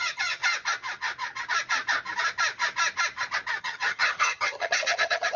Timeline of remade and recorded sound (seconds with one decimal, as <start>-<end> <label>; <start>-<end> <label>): 0.0-0.4 remade; 0.4-3.6 recorded; 3.6-5.4 remade